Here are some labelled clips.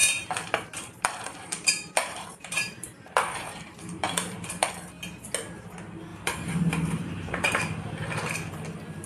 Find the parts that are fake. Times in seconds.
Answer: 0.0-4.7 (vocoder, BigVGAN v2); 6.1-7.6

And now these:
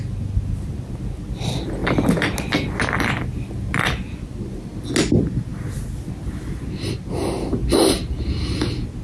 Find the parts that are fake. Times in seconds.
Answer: none

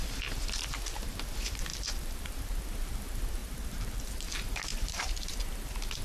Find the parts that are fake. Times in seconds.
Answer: 1.7-2.4 (vocoder, BigVGAN v2); 3.4-4.3; 4.7-5.4